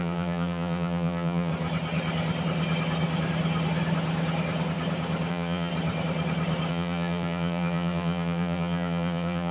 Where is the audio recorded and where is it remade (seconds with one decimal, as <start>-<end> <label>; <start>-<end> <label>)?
0.0-1.5 remade; 1.5-5.3 recorded; 5.3-5.7 remade; 5.7-6.7 recorded; 6.7-9.5 remade